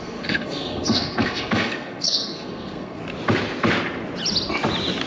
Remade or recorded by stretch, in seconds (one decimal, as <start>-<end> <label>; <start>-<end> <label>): 0.0-3.0 remade; 3.0-5.1 recorded